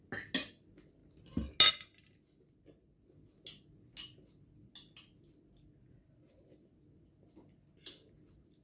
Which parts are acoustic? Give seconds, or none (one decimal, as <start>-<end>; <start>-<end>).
0.0-8.6